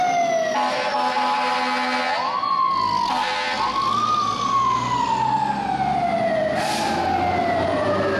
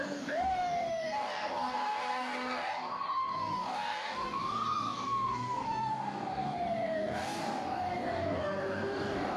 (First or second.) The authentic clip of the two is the first